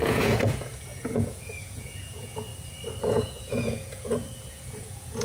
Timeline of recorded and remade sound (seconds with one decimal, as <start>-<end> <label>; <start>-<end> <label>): 0.0-2.5 remade; 2.5-3.0 recorded; 3.0-5.2 remade